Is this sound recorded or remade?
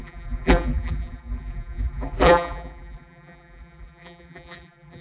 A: remade